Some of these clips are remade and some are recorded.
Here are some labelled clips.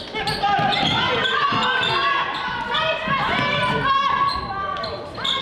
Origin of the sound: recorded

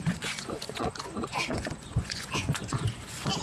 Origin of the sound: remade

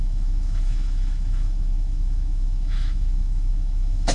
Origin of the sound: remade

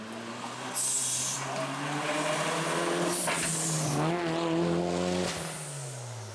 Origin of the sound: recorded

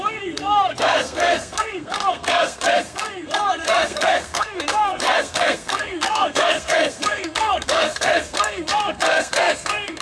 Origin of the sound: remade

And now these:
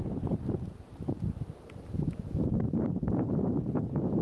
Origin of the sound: remade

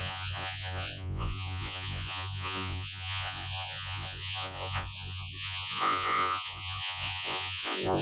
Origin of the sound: remade